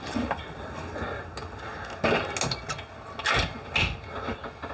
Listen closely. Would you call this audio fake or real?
real